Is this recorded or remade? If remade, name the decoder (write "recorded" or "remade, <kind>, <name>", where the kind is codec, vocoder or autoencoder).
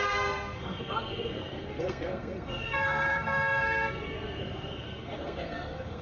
remade, codec, SNAC